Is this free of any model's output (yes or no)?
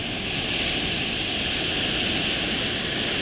yes